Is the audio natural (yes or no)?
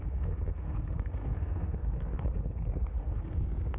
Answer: no